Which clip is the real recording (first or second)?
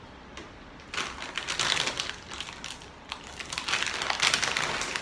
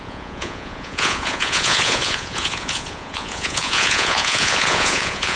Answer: first